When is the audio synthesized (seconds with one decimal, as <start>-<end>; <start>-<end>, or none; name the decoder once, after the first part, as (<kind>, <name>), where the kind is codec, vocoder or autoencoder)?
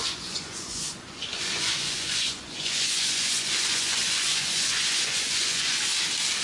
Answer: 0.0-5.9 (vocoder, Vocos)